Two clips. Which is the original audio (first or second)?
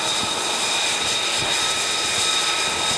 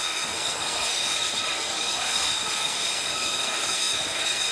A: first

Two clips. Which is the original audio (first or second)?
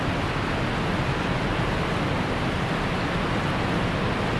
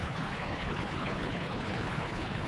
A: first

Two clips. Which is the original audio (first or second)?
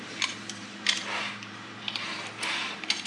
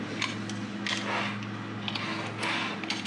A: second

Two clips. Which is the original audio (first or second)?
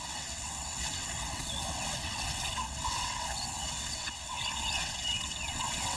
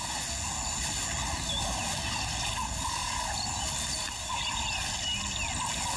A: second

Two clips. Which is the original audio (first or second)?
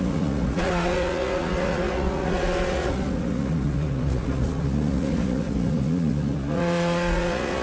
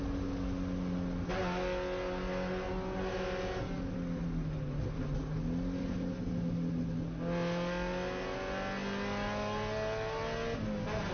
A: second